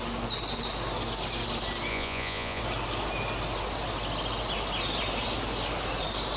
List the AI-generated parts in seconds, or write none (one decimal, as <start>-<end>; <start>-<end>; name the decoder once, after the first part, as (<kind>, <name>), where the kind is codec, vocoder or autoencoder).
1.9-2.6 (vocoder, Vocos)